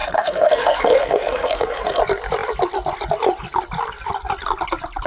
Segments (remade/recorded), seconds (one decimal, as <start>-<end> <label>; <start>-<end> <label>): 0.0-2.0 remade; 2.0-5.1 recorded